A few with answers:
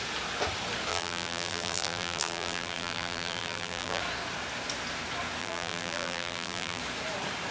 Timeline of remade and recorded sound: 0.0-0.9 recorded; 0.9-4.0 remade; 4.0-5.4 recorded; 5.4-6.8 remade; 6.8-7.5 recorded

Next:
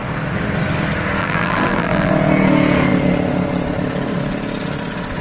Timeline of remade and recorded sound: 0.0-1.2 recorded; 1.2-2.1 remade; 2.1-5.2 recorded

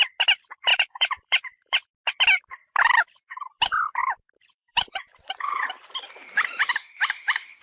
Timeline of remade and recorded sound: 0.0-0.7 recorded; 0.7-1.9 remade; 1.9-2.6 recorded; 2.6-3.6 remade; 3.6-4.0 recorded; 4.0-7.6 remade

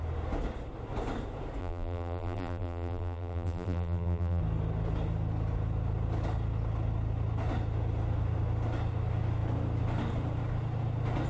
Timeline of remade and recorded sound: 0.0-1.6 recorded; 1.6-4.4 remade; 4.4-11.3 recorded

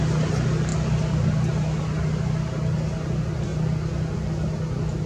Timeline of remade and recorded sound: 0.0-5.1 recorded